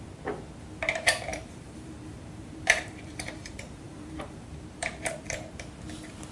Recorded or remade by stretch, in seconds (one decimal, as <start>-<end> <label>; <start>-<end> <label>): 0.0-1.3 recorded; 1.3-5.1 remade; 5.1-6.3 recorded